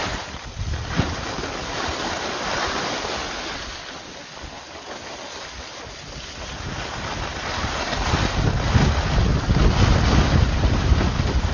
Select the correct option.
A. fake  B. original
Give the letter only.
B